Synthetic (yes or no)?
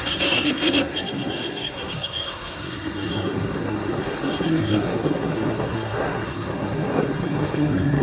yes